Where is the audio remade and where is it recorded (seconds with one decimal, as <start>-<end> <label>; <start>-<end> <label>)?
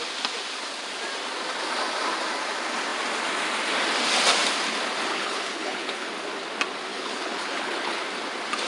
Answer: 0.0-5.1 recorded; 5.1-6.1 remade; 6.1-6.9 recorded; 6.9-8.0 remade; 8.0-8.7 recorded